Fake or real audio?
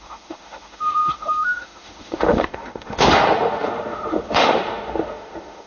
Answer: fake